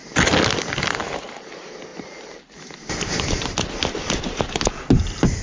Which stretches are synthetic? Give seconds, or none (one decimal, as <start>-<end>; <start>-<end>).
none